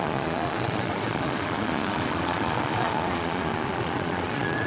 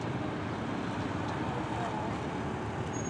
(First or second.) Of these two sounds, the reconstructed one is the first